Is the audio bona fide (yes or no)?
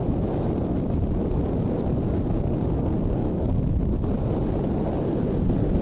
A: yes